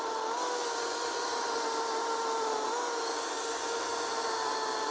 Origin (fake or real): real